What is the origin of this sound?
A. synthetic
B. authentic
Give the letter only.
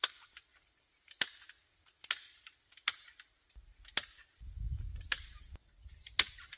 B